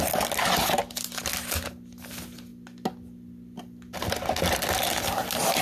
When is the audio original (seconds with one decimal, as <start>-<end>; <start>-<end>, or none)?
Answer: 0.0-5.6